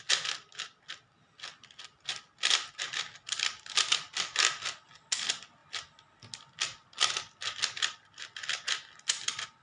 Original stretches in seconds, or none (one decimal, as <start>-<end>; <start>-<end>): 0.0-9.6